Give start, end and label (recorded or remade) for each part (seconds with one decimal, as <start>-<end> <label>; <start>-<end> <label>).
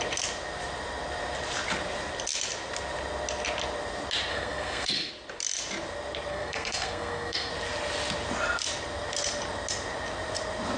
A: 0.0-4.3 recorded; 4.3-5.1 remade; 5.1-6.3 recorded; 6.3-7.5 remade; 7.5-10.8 recorded